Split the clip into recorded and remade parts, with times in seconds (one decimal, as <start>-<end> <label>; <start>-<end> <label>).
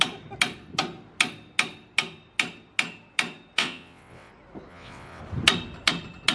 0.0-3.6 recorded; 3.6-4.3 remade; 4.3-4.7 recorded; 4.7-5.2 remade; 5.2-6.3 recorded